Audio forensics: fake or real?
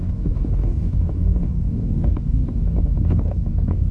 fake